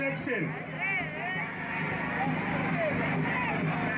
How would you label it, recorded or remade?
recorded